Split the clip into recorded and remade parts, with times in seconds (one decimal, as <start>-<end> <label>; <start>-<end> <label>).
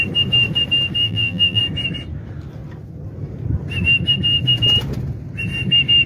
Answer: 0.0-1.0 recorded; 1.0-1.6 remade; 1.6-6.1 recorded